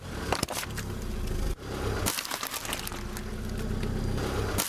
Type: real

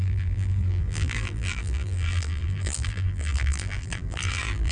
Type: fake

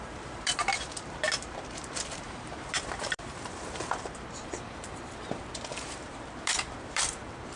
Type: fake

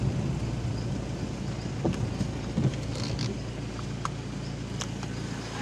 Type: real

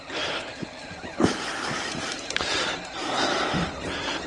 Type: fake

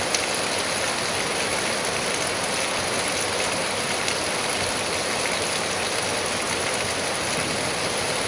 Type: real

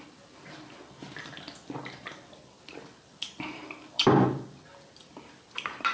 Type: fake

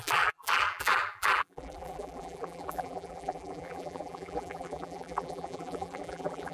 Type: fake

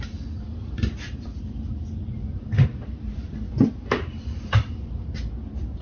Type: fake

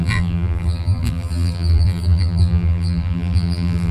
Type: fake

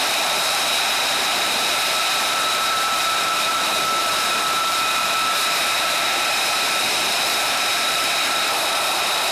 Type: fake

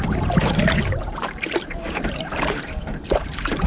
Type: fake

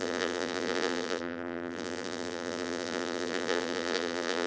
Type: fake